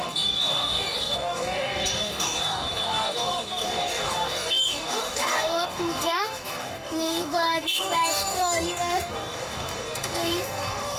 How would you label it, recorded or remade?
remade